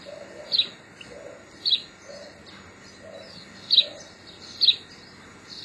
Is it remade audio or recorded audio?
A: recorded